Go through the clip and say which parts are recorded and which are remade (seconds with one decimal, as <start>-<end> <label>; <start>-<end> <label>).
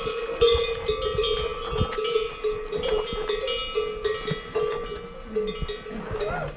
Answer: 0.0-6.6 recorded